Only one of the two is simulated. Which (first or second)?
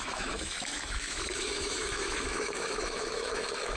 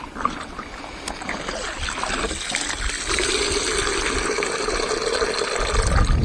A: first